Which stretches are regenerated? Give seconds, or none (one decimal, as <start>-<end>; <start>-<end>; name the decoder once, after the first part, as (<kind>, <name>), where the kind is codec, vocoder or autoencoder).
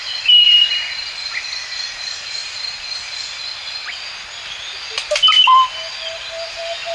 none